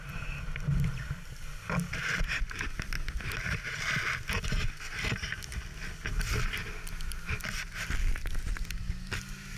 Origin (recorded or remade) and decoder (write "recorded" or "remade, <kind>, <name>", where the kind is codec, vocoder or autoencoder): recorded